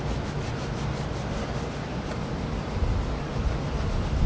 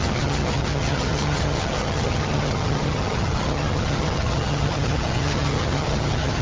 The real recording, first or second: first